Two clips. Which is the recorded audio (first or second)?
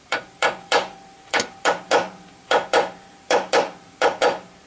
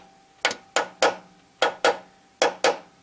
second